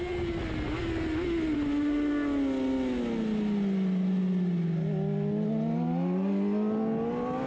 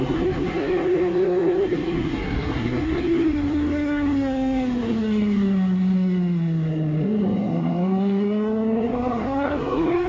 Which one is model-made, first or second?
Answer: second